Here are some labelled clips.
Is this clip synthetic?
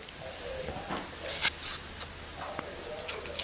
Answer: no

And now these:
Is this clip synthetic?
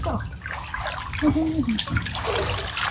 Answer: no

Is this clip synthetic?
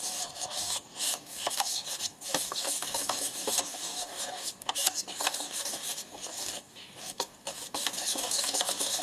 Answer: yes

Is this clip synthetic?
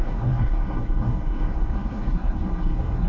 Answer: yes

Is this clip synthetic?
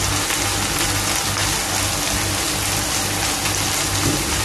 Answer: no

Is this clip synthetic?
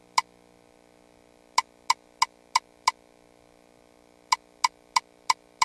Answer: no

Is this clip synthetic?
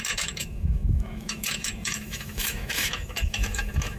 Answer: yes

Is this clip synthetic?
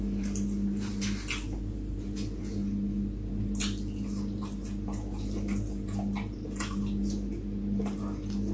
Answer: no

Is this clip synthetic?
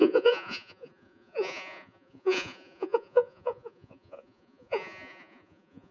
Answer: yes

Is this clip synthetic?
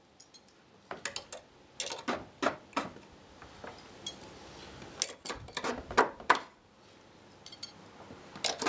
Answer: no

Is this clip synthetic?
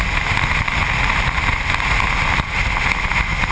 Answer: no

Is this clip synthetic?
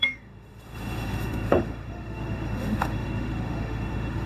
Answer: yes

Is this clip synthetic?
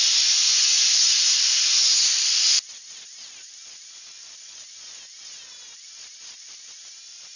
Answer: no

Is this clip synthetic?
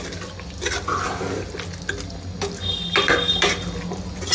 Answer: no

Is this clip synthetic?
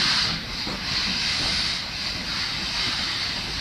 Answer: no